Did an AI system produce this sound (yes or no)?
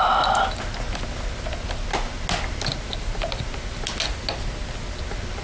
no